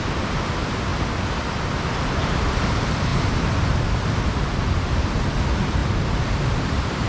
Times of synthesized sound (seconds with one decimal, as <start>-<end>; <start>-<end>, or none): 0.0-0.9; 2.0-3.1; 4.3-5.8; 6.6-7.1